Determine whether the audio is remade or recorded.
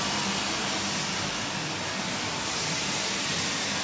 recorded